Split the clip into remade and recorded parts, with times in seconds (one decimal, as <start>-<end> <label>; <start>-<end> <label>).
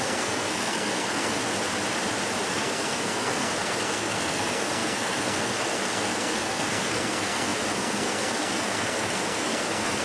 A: 0.0-1.4 remade; 1.4-2.5 recorded; 2.5-10.0 remade